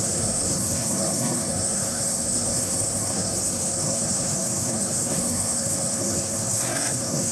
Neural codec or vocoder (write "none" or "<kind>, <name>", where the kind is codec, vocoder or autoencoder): codec, SNAC